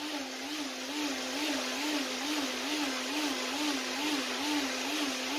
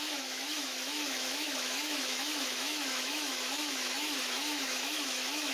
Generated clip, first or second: second